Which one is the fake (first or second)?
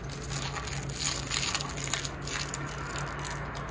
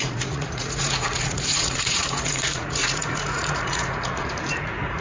second